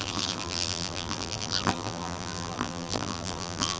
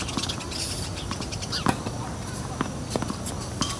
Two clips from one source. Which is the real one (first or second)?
second